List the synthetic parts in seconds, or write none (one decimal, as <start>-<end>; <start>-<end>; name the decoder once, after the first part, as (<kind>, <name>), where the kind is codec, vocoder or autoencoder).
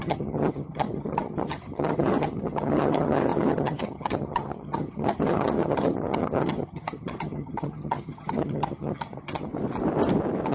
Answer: 0.0-9.5 (vocoder, HiFi-GAN)